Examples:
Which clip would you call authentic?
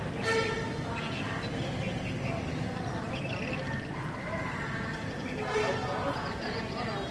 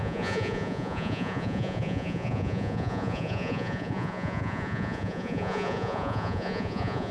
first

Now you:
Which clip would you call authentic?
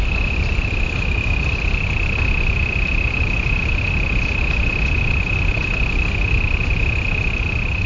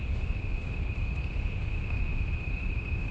first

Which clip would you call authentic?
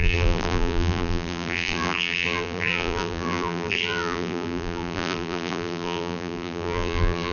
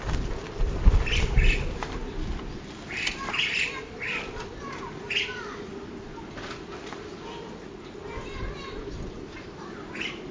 second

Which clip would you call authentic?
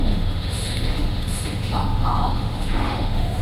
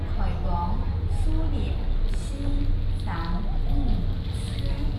second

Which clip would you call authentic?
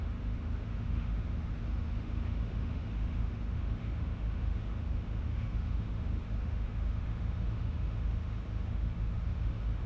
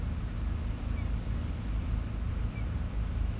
second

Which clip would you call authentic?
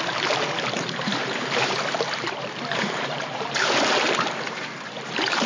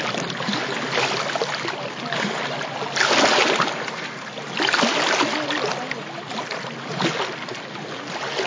second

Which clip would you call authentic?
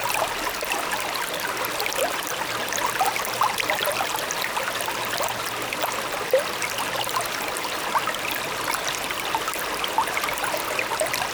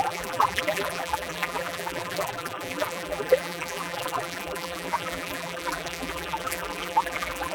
first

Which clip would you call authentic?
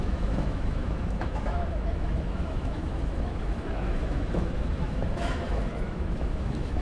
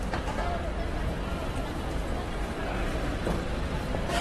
second